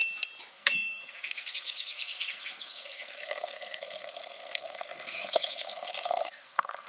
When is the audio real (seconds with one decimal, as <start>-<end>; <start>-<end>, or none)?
0.0-0.5